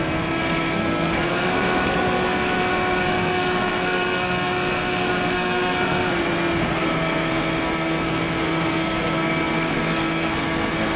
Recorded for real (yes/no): no